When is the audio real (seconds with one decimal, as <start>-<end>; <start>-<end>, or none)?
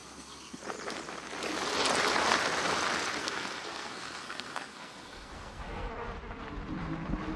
0.6-3.2; 5.9-7.4